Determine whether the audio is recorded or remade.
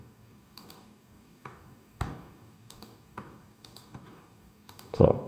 remade